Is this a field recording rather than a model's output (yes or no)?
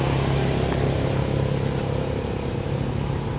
yes